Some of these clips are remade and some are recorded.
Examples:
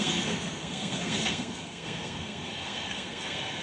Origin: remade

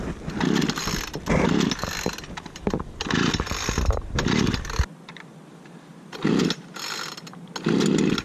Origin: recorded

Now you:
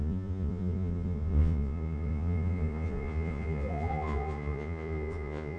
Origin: remade